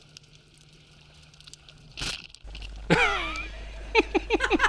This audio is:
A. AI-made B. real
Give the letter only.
B